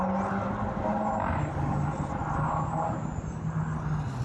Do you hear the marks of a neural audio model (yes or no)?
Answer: no